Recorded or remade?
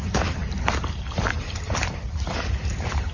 remade